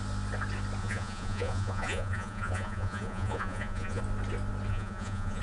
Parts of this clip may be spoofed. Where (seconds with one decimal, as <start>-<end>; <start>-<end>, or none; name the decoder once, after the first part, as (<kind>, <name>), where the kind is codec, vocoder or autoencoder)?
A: 0.8-4.0 (vocoder, Vocos); 4.7-5.4